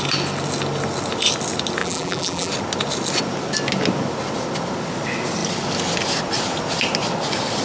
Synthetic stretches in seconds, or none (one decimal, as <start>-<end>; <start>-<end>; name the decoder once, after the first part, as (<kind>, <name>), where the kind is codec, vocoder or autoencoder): 1.8-2.5 (vocoder, BigVGAN v2)

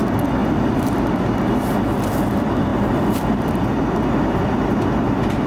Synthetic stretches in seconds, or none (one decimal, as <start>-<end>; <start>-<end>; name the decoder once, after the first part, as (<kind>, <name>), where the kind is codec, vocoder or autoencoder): 0.4-1.1 (vocoder, BigVGAN v2); 2.7-3.3